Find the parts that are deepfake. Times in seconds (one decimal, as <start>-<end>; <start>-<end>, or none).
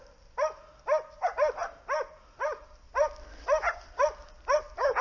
none